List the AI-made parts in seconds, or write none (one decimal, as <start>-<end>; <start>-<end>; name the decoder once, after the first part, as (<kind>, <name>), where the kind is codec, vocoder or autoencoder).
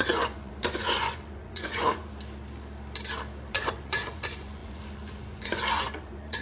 0.0-2.1 (vocoder, Vocos); 3.5-6.4